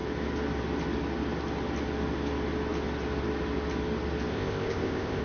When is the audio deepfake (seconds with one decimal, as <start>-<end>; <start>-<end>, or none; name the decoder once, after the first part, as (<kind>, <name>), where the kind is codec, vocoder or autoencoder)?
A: 4.3-5.2 (codec, ZipCodec)